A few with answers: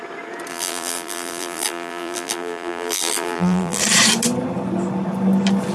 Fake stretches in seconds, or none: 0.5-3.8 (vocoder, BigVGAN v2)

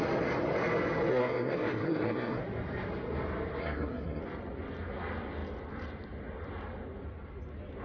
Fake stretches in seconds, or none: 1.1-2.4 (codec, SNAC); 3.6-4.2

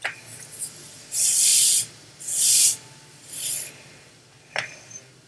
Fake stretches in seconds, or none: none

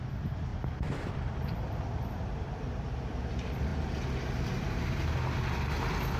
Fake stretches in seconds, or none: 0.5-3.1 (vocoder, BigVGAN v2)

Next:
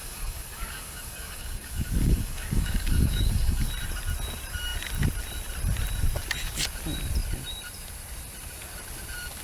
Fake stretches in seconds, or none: 0.0-3.7 (codec, DAC)

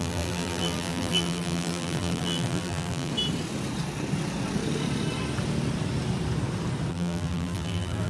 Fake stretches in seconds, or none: 0.0-3.1 (vocoder, BigVGAN v2); 6.9-8.1